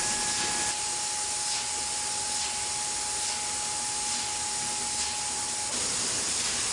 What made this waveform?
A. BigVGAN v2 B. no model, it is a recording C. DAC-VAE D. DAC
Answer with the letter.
B